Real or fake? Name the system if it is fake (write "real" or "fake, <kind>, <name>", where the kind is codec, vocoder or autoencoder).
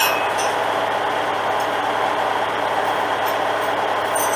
real